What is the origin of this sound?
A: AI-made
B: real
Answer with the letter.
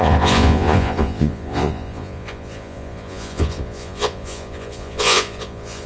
A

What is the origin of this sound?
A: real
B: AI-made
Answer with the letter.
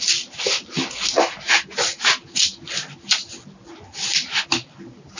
A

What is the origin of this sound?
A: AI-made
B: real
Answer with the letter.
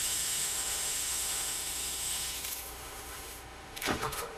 A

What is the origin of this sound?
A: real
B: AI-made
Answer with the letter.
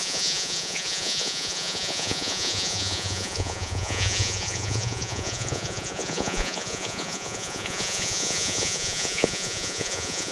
B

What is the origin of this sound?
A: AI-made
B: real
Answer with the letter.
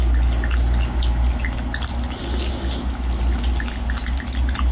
B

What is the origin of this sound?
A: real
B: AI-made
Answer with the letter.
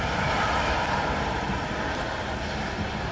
A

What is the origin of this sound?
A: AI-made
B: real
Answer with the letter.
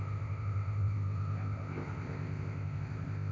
A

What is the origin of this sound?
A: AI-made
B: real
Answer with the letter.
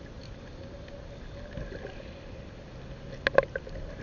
B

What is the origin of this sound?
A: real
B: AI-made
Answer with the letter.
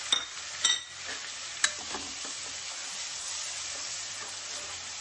A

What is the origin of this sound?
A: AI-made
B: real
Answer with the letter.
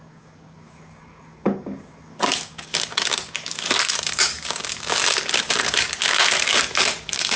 A